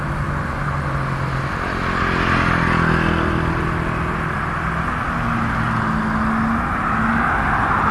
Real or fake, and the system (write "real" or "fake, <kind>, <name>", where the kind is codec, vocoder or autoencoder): real